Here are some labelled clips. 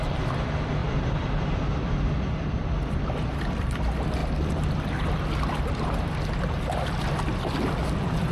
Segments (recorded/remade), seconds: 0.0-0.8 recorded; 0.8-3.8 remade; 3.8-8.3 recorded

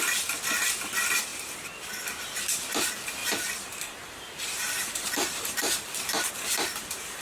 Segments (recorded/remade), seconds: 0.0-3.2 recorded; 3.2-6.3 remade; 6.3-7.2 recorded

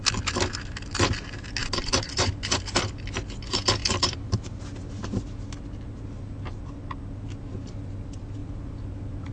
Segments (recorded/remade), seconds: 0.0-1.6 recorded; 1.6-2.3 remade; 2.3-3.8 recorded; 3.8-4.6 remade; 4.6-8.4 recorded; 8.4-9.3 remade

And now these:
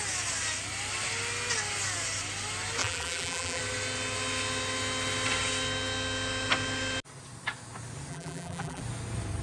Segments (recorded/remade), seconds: 0.0-2.8 recorded; 2.8-3.6 remade; 3.6-8.1 recorded; 8.1-8.8 remade; 8.8-9.4 recorded